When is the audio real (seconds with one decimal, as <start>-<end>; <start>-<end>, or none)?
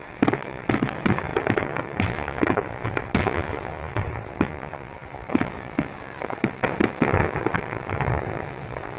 none